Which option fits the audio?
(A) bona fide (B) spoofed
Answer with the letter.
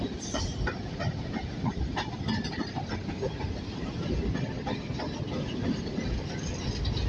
A